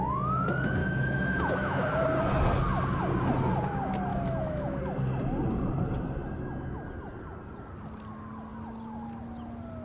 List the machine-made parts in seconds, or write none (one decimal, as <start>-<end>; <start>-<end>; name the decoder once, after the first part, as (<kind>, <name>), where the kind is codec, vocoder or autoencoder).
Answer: 0.8-1.9 (autoencoder, DAC-VAE); 4.1-4.8